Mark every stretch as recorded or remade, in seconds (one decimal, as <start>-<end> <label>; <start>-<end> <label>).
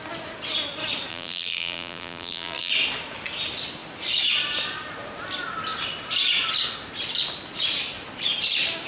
0.0-1.1 recorded; 1.1-2.7 remade; 2.7-8.9 recorded